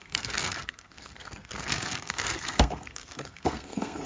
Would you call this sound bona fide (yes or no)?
no